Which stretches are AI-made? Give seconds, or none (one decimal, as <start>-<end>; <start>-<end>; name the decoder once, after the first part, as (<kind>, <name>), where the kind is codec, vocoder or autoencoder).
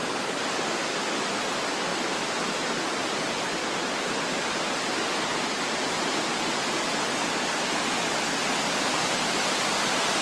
none